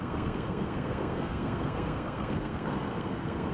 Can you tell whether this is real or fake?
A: fake